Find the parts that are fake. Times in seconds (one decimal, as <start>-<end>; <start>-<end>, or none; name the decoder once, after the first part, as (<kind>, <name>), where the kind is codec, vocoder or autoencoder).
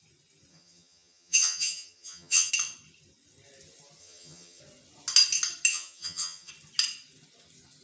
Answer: 0.5-2.5 (vocoder, HiFi-GAN); 4.0-4.6; 5.7-6.5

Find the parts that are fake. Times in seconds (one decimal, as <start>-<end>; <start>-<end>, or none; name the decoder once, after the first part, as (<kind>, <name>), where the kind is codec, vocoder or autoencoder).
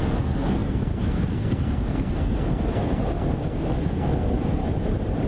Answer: 0.0-4.6 (codec, SNAC)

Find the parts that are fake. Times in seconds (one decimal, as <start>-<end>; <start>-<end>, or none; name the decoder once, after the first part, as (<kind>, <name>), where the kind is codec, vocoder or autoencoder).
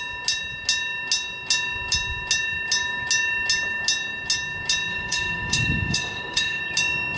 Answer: 4.9-6.6 (codec, DAC)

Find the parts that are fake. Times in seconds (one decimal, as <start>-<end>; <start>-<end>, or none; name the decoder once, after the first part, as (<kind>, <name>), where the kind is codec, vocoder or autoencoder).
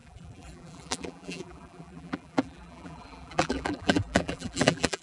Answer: 0.0-5.0 (vocoder, BigVGAN v2)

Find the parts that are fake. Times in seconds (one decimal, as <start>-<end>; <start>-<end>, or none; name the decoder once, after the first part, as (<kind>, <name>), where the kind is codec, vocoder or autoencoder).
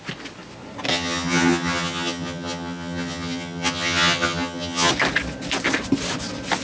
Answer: 0.9-4.9 (vocoder, HiFi-GAN)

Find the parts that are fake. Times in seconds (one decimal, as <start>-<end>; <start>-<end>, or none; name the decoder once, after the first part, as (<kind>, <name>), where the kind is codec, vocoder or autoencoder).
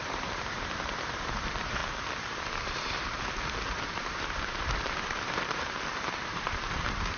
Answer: 0.0-1.8 (vocoder, BigVGAN v2); 2.4-7.2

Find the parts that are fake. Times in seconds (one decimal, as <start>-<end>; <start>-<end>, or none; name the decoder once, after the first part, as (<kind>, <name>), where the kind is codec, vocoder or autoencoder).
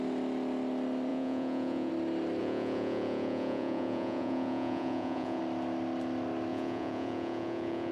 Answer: 1.1-1.9 (vocoder, Vocos); 2.4-5.4; 6.5-7.9